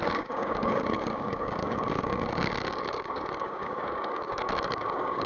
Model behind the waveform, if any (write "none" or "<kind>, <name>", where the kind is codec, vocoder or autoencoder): codec, DAC